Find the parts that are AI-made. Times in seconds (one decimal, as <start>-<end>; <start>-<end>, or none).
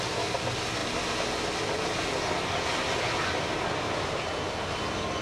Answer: none